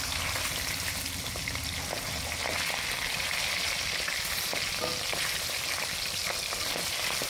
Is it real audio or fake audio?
real